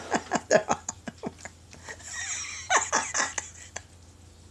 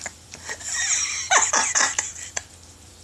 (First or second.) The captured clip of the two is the first